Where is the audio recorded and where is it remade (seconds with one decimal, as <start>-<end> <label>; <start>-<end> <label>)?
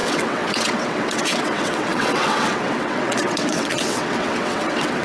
0.0-5.0 remade